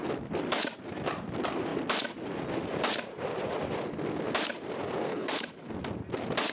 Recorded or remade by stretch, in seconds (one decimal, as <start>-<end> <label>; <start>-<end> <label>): 0.0-5.1 recorded; 5.1-5.7 remade; 5.7-6.5 recorded